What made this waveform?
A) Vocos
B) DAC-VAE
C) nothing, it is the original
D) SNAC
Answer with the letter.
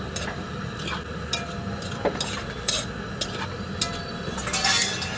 C